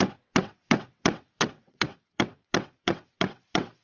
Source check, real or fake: fake